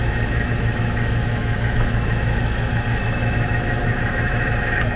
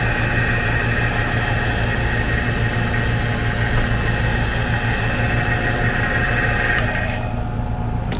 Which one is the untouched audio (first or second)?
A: second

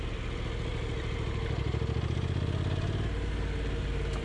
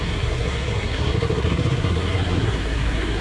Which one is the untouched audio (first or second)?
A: first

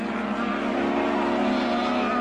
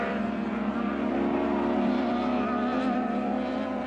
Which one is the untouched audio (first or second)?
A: first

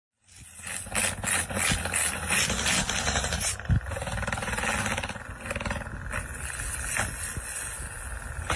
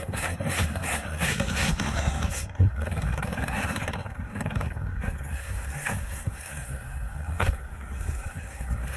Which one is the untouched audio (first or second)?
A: first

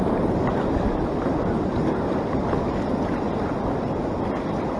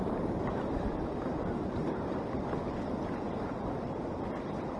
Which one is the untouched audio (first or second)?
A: first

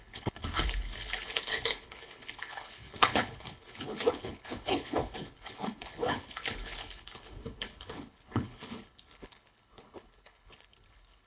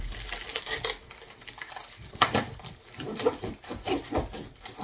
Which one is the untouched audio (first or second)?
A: second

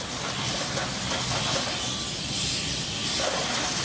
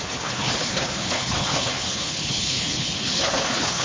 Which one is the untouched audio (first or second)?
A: first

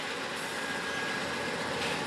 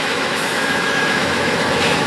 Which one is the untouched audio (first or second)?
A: first